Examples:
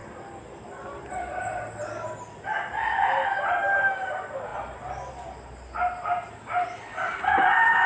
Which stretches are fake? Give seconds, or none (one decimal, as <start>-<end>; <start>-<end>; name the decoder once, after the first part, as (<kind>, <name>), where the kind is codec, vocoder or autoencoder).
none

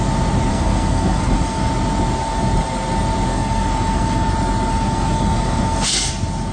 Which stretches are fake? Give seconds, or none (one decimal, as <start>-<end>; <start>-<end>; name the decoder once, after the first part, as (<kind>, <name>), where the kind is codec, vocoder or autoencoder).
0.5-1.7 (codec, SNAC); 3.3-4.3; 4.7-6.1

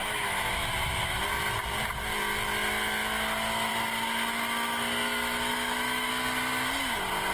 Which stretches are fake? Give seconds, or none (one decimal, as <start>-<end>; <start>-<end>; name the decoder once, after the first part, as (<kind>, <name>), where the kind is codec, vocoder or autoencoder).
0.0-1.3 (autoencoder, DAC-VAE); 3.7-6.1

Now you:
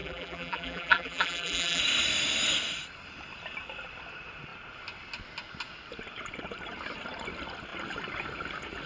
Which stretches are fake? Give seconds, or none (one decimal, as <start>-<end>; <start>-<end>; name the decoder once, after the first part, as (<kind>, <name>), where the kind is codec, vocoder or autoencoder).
0.0-1.8 (vocoder, BigVGAN v2)

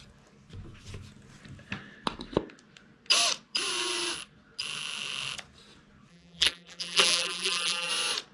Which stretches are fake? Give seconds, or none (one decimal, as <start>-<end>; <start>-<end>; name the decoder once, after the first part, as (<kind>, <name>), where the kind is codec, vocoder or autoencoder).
6.1-7.9 (vocoder, BigVGAN v2)